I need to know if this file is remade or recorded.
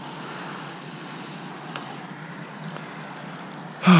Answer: recorded